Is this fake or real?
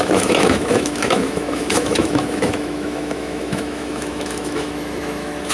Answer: fake